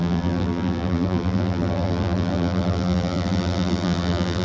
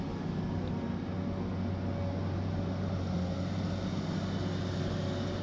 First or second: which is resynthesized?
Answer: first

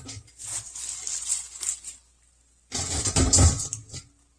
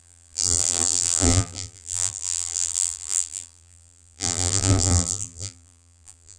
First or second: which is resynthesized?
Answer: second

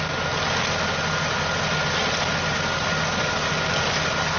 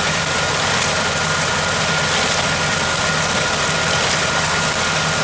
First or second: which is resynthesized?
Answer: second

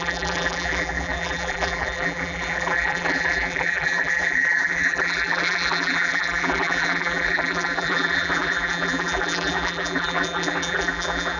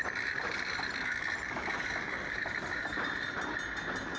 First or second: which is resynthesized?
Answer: first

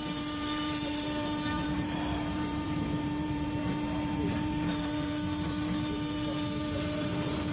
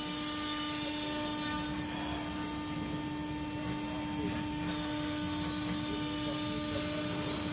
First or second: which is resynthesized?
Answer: first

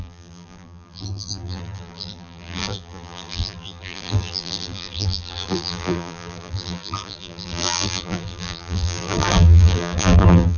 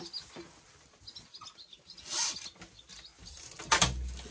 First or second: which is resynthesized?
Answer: first